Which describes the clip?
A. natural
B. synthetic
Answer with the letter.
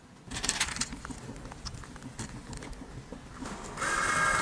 A